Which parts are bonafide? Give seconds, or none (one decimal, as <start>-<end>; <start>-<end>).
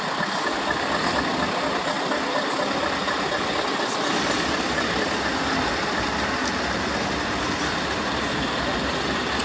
0.0-9.4